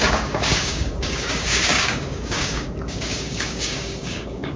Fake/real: fake